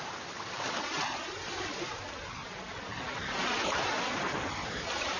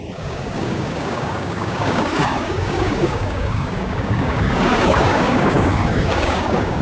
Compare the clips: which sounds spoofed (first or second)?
second